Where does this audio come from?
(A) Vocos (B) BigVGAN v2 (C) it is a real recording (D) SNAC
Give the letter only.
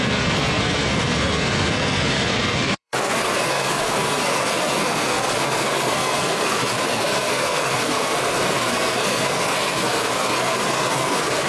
D